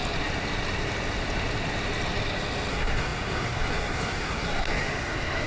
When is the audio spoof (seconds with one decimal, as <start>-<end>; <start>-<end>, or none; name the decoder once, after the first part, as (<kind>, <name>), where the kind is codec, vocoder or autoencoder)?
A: 2.7-5.5 (codec, SNAC)